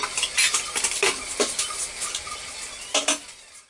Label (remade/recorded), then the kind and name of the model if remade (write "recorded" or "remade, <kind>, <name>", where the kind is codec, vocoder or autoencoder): recorded